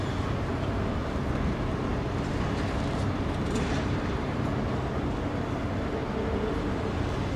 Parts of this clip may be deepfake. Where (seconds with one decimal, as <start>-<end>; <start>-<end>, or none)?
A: 0.5-4.9